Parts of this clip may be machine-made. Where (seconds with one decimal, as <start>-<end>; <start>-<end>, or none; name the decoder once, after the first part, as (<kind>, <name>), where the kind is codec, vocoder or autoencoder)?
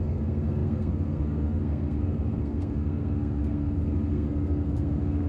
0.0-5.3 (codec, SNAC)